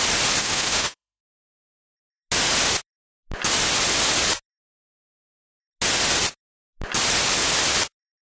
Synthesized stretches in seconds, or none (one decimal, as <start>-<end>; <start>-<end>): 0.4-1.2